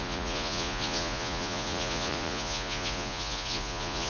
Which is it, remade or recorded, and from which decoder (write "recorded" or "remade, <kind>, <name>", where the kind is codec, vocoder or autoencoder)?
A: remade, vocoder, Vocos